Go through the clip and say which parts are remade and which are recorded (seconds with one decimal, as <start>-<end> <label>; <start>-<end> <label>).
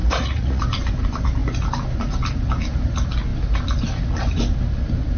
0.0-0.6 remade; 0.6-5.2 recorded